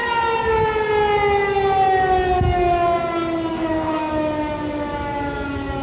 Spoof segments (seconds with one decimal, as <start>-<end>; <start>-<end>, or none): 3.5-4.1